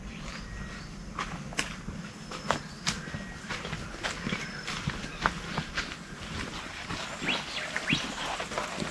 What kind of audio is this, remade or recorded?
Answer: recorded